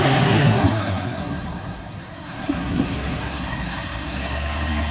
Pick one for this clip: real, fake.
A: fake